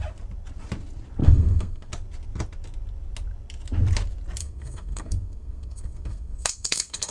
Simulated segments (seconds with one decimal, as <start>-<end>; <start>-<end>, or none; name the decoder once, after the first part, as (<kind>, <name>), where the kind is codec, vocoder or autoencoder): 1.2-1.9 (codec, SNAC); 4.4-7.1